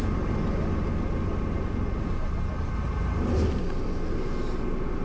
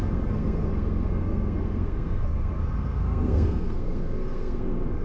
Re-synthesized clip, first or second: second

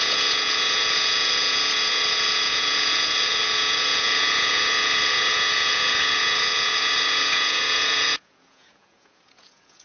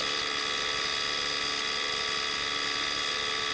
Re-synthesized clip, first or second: first